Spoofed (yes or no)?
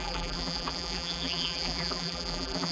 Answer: yes